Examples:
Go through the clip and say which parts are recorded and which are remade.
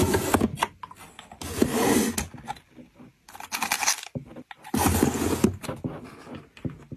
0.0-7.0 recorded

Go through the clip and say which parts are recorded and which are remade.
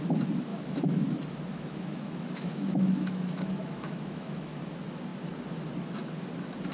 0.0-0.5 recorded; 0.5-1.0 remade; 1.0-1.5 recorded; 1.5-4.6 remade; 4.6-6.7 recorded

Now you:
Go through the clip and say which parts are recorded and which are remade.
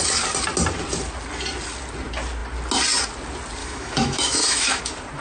0.0-3.6 recorded; 3.6-4.8 remade; 4.8-5.2 recorded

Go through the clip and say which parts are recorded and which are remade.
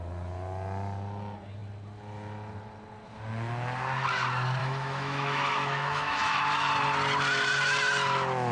0.0-4.6 recorded; 4.6-6.4 remade; 6.4-8.5 recorded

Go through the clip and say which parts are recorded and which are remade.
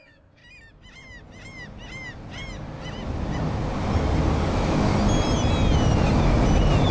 0.0-0.4 remade; 0.4-4.5 recorded; 4.5-4.9 remade; 4.9-6.9 recorded